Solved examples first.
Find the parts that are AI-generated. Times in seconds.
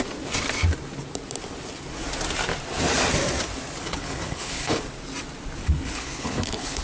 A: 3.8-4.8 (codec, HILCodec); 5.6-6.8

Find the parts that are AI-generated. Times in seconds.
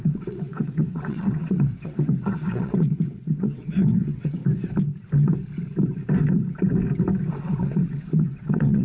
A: 0.0-4.4 (vocoder, WaveNeXt); 7.4-8.8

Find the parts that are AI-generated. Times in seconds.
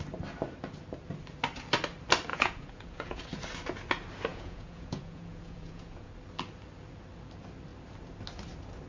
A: 2.3-3.2 (vocoder, Vocos); 4.3-6.1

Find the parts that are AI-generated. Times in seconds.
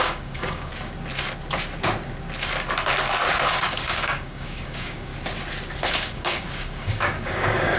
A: 0.0-0.7 (codec, DAC); 3.5-5.1; 5.9-7.8